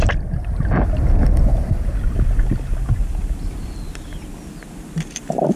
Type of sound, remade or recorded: recorded